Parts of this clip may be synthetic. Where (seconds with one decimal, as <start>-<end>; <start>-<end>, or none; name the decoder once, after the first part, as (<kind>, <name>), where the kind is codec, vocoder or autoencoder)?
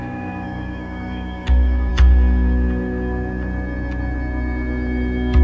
0.0-1.9 (autoencoder, DAC-VAE)